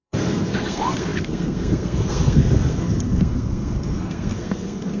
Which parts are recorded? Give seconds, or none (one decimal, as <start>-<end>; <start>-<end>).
none